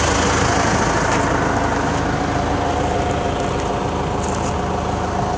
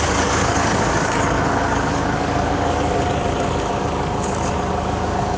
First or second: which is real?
first